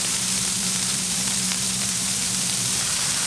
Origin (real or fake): fake